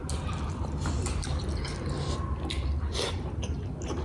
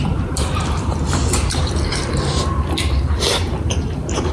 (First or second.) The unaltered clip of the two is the first